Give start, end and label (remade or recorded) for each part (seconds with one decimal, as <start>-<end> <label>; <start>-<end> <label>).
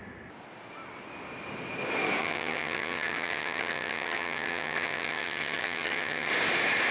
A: 0.0-2.2 recorded; 2.2-6.3 remade; 6.3-6.9 recorded